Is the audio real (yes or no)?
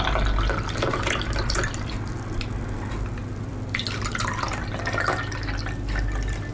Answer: yes